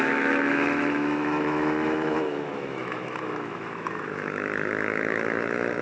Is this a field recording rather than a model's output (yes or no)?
no